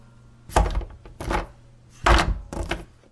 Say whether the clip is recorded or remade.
recorded